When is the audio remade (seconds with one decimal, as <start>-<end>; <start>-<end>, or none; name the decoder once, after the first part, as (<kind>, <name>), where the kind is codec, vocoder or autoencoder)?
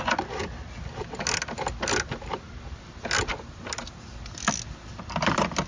none